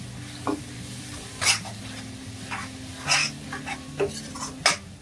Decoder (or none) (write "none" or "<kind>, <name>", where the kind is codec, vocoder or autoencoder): none